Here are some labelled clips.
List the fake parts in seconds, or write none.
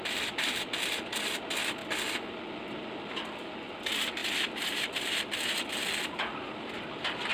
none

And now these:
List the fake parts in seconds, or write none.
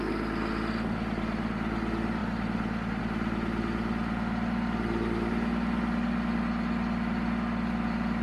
none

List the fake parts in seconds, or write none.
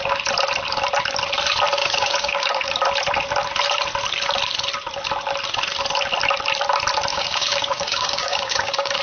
1.8-2.7 (codec, DAC); 7.1-9.0